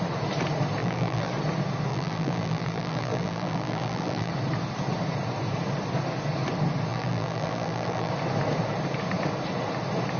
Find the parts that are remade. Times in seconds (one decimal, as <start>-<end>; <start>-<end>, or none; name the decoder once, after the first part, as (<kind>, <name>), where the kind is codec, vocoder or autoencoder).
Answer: 0.8-1.3 (vocoder, BigVGAN v2); 1.9-4.3; 6.9-8.1